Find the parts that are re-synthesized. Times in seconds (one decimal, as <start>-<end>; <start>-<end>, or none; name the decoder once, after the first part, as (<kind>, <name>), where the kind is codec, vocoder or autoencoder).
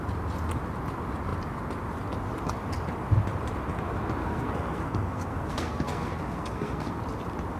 4.2-7.0 (codec, SNAC)